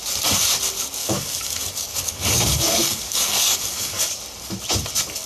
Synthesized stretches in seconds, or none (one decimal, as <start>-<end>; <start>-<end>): 1.0-4.2